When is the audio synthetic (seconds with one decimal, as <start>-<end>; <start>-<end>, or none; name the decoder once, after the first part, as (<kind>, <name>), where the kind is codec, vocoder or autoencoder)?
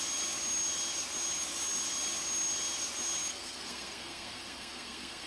3.3-5.3 (codec, SNAC)